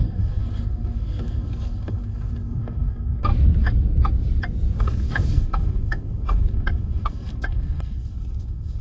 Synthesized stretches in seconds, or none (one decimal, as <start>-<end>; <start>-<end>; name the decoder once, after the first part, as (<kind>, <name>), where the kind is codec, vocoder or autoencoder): 0.0-3.3 (codec, SNAC); 4.8-8.8